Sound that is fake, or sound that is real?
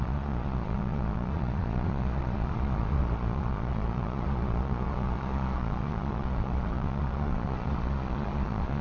fake